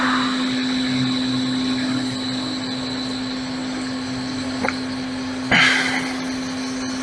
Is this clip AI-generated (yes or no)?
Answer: no